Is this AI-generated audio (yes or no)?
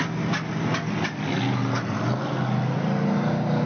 no